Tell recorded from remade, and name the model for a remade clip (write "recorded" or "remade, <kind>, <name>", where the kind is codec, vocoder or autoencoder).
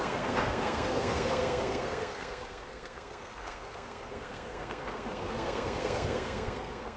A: remade, codec, SNAC